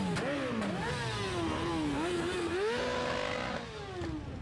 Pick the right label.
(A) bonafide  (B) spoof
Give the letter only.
A